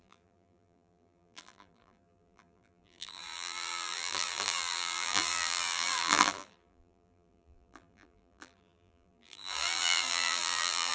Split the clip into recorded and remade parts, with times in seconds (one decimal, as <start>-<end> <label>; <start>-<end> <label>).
0.0-10.9 remade